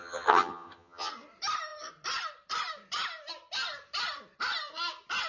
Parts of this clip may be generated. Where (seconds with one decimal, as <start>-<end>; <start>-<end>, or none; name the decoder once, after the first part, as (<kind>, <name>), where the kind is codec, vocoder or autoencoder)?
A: 0.0-1.1 (vocoder, HiFi-GAN)